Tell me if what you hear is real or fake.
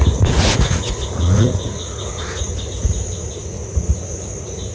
fake